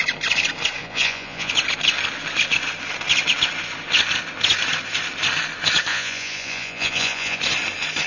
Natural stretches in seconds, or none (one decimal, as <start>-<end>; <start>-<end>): 0.0-0.8; 1.5-5.9; 7.4-8.1